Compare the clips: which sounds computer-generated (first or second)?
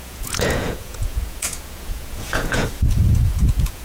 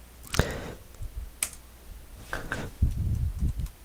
first